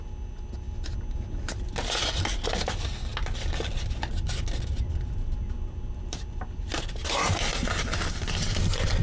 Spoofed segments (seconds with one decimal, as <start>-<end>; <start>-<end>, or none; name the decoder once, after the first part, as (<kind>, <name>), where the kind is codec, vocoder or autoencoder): none